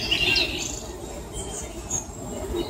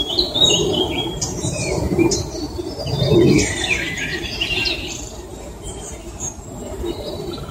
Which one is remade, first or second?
second